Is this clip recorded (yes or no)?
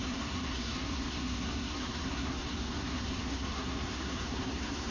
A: no